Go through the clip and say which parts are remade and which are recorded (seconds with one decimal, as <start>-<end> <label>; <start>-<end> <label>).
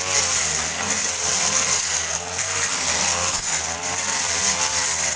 0.0-0.5 recorded; 0.5-3.6 remade; 3.6-5.2 recorded